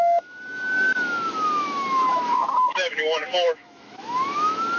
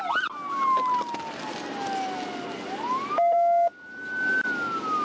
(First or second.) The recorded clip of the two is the second